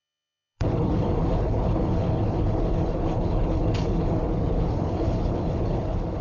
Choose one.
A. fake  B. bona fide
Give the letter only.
A